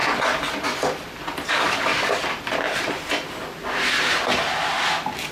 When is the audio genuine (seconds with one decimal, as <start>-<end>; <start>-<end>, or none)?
0.0-1.5; 1.9-5.3